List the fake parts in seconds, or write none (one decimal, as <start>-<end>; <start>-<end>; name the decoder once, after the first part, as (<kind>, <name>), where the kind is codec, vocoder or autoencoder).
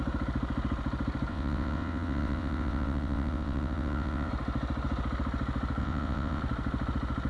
1.3-4.3 (vocoder, WaveNeXt); 5.8-6.4